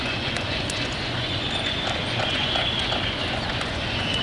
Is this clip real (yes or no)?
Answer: no